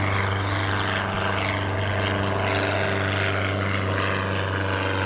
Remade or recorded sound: recorded